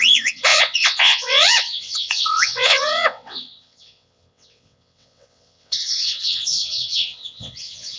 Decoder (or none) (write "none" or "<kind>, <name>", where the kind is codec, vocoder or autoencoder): vocoder, WaveNeXt